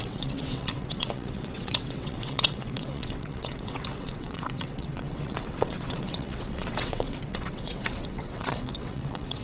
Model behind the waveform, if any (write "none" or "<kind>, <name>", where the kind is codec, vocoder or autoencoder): vocoder, WaveNeXt